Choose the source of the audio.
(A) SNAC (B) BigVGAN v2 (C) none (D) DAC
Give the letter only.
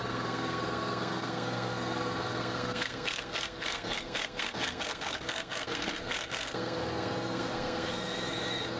A